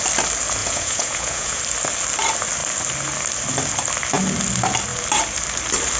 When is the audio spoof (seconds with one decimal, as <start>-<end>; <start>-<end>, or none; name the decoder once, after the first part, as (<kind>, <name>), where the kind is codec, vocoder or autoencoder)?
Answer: 0.6-1.6 (vocoder, Vocos)